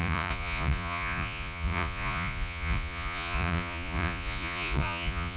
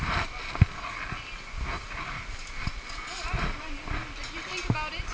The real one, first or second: second